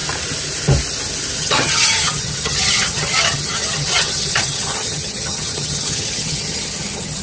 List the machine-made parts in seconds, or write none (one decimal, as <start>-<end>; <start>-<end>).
1.4-7.2